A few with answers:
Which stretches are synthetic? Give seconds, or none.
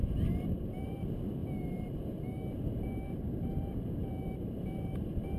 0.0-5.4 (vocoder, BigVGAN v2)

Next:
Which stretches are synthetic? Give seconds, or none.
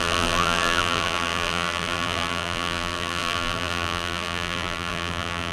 0.0-5.5 (vocoder, BigVGAN v2)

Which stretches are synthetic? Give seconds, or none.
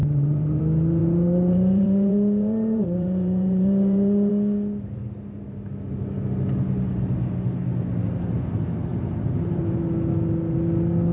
0.0-0.6 (vocoder, BigVGAN v2); 1.0-4.3; 8.9-9.8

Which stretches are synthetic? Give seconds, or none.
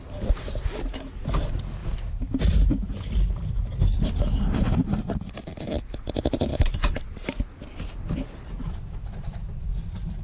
none